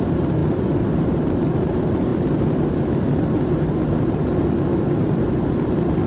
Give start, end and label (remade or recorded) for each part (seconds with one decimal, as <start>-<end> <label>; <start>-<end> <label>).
0.0-6.1 remade